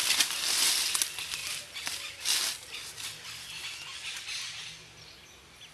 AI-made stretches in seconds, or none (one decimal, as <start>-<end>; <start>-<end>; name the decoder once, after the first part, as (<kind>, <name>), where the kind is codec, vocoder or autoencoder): none